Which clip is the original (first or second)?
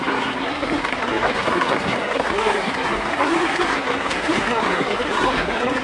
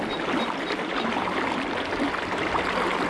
second